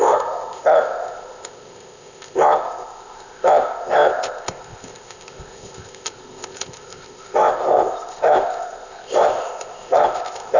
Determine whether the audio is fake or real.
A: fake